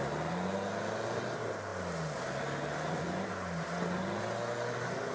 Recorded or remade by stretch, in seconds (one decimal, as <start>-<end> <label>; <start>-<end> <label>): 0.0-5.1 recorded